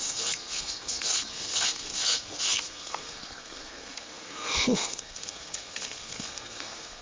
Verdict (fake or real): fake